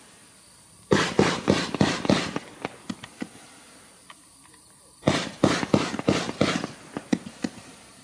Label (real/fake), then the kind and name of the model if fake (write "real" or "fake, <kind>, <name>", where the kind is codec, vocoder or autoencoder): real